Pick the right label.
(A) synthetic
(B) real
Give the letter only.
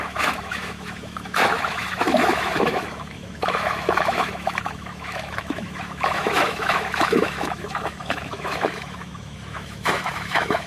A